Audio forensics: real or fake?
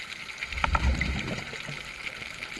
real